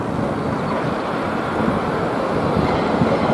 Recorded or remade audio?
recorded